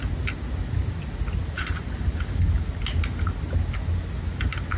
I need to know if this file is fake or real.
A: real